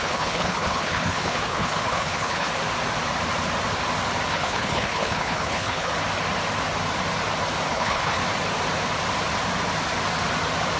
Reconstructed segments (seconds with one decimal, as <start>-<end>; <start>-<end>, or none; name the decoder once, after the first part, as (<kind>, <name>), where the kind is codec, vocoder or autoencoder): 0.0-2.5 (codec, HILCodec); 4.3-5.9; 7.7-8.2